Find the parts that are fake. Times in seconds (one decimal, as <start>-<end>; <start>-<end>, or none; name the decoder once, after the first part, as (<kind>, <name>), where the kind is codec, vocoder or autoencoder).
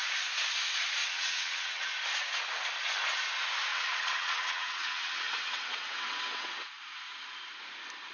1.0-1.9 (vocoder, WaveNeXt); 3.7-6.7